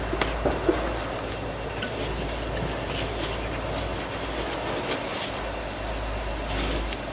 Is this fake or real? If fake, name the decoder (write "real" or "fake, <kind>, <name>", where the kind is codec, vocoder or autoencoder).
real